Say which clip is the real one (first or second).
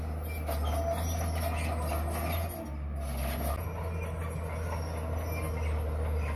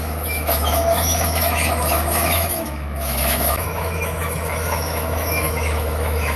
first